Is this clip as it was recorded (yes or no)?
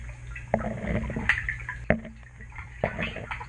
yes